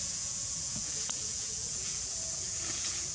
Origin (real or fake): fake